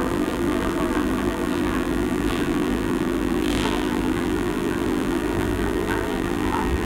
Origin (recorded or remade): remade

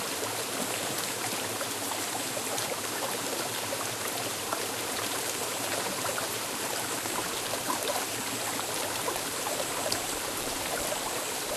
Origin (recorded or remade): remade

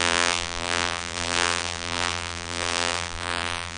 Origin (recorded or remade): remade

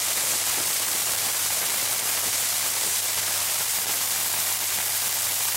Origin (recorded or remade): remade